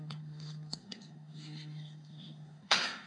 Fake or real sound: fake